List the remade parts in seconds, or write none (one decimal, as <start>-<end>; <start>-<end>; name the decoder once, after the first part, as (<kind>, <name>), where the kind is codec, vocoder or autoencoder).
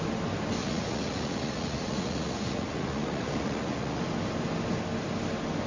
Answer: 0.6-4.0 (vocoder, Vocos)